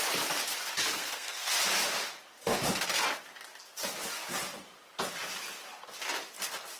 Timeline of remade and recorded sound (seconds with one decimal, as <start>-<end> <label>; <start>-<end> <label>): 0.0-0.9 recorded; 0.9-1.5 remade; 1.5-6.8 recorded